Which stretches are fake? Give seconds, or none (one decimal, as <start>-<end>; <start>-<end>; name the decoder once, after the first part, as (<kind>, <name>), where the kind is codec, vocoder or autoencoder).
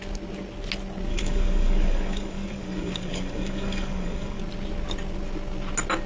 1.1-4.4 (codec, DAC)